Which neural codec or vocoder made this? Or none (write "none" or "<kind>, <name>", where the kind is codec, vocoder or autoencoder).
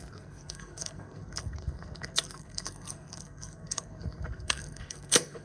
codec, SNAC